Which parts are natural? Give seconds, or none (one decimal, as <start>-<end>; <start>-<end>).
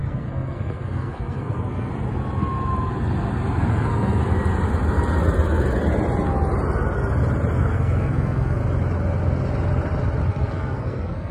1.9-3.7; 4.2-7.6; 8.6-10.3